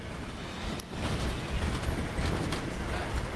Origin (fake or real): real